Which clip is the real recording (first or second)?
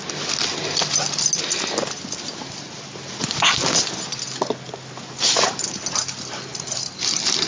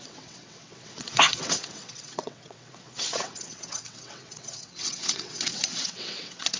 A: first